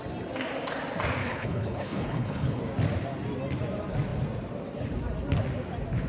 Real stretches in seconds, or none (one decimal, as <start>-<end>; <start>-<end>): 0.0-1.2; 2.6-6.1